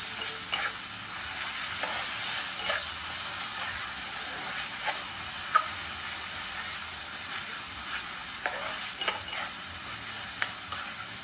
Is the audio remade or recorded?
recorded